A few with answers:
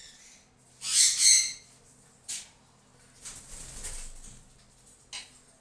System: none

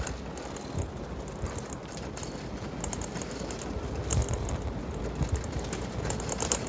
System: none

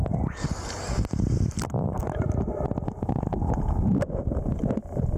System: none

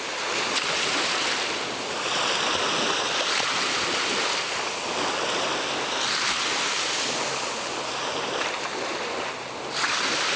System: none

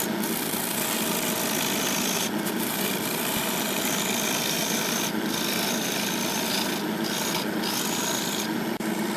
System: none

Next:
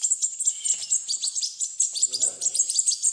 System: none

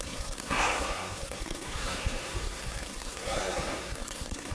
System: codec, SNAC